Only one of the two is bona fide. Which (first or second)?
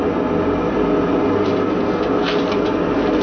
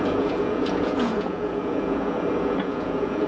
first